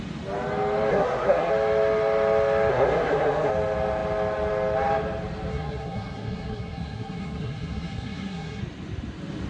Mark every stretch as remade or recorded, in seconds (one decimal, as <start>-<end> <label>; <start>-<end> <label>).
0.0-0.9 recorded; 0.9-1.5 remade; 1.5-2.7 recorded; 2.7-3.5 remade; 3.5-5.5 recorded; 5.5-8.6 remade; 8.6-9.5 recorded